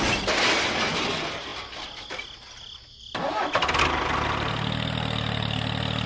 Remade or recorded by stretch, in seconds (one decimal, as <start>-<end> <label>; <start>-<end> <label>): 0.0-6.1 recorded